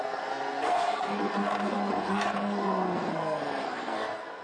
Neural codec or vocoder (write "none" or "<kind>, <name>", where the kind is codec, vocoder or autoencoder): codec, SNAC